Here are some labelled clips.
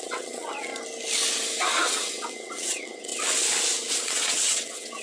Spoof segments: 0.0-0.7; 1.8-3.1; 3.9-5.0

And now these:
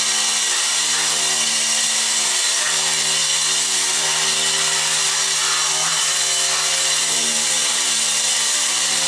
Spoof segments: none